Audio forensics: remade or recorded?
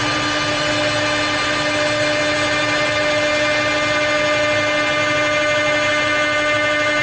recorded